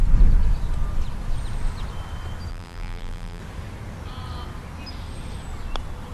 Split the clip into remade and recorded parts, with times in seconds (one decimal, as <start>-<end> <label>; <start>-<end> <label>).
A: 0.0-2.5 recorded; 2.5-3.4 remade; 3.4-6.1 recorded